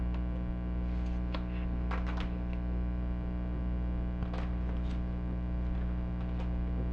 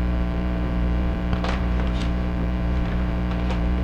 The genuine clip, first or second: first